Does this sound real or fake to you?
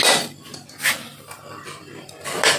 real